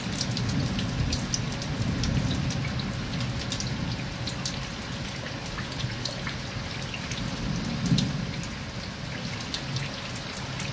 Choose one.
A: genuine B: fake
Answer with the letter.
A